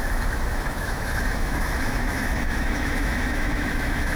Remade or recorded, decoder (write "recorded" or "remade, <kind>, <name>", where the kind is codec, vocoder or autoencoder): remade, autoencoder, DAC-VAE